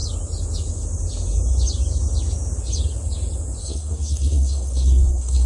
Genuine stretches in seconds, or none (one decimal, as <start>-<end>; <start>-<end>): 0.0-3.6